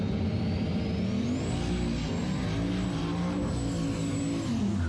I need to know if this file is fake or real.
real